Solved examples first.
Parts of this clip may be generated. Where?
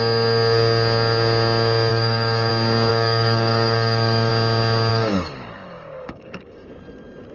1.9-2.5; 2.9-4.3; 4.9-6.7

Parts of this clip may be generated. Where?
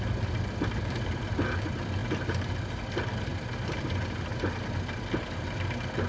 0.0-3.3; 3.8-4.3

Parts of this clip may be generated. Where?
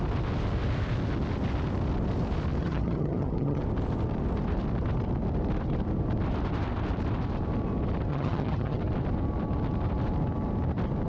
2.6-3.6; 8.1-8.8